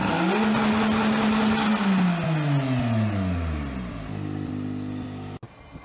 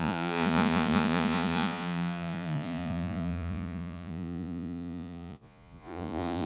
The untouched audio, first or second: first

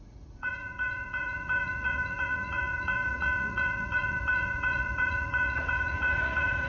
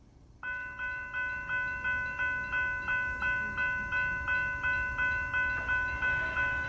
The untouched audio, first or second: second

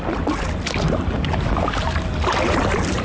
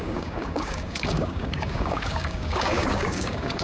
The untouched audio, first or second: first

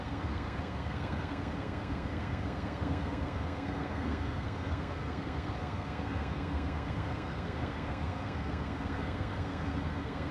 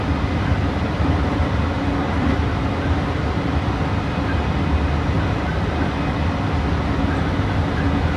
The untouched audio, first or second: second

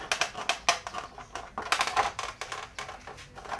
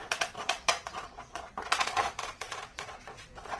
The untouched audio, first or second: first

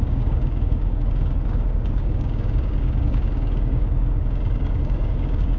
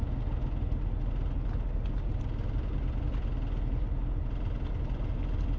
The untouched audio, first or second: second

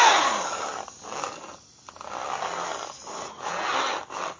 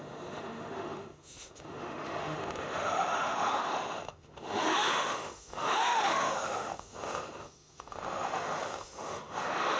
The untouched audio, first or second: first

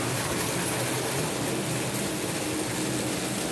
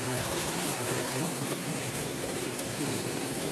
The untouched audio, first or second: first